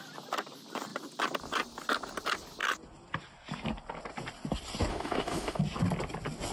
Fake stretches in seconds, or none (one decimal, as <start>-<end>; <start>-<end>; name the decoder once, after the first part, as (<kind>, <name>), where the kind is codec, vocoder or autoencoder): 4.9-5.6 (autoencoder, DAC-VAE)